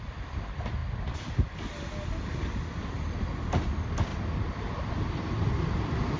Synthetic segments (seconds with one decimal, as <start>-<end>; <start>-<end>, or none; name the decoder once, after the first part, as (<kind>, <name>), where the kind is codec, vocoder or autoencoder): none